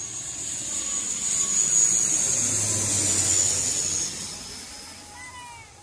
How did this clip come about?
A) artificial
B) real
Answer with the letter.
B